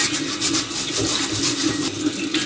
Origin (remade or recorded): recorded